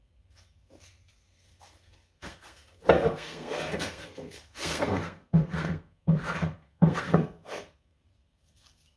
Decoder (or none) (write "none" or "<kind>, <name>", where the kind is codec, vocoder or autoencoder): codec, SNAC